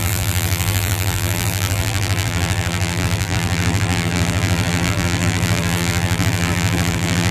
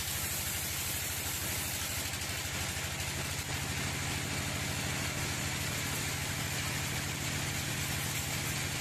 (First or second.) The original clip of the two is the second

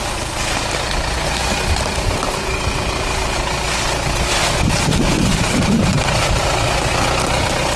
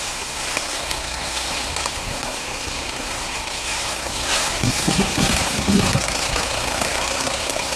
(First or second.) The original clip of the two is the first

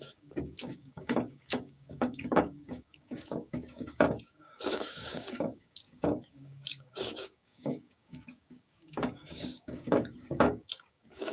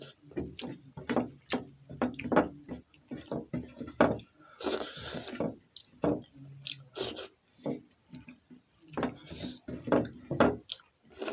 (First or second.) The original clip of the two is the second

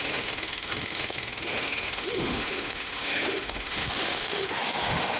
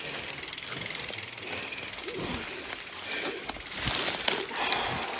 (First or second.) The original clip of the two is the second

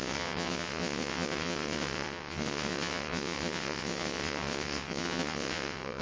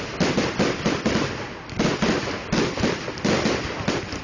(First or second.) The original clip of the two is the second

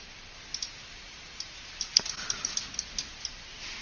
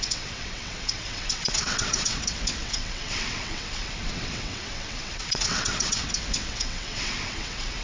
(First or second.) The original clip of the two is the first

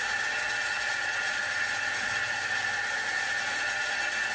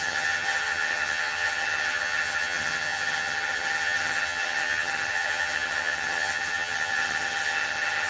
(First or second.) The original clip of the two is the first